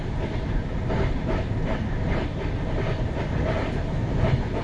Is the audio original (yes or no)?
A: yes